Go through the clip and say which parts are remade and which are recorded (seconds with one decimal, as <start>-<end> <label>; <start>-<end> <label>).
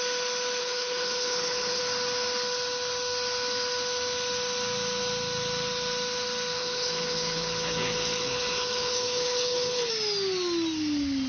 0.0-0.6 recorded; 0.6-1.8 remade; 1.8-6.6 recorded; 6.6-9.9 remade; 9.9-11.3 recorded